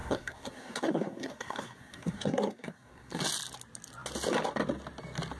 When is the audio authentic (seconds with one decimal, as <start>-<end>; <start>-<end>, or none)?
3.2-5.4